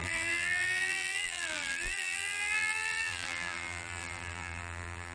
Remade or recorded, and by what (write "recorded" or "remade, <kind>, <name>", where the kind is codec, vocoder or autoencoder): remade, vocoder, BigVGAN v2